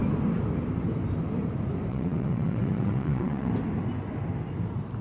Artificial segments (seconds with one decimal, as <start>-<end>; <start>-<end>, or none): 1.9-3.5